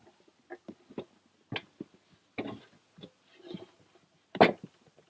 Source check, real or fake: real